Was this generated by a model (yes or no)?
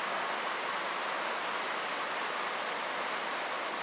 no